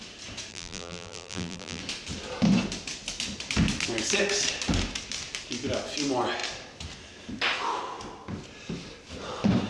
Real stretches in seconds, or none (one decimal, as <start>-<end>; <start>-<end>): 0.0-0.5; 1.8-9.7